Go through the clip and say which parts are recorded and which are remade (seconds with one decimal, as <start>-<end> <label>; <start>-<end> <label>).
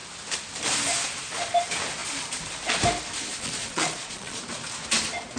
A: 0.0-3.3 recorded; 3.3-4.4 remade; 4.4-5.4 recorded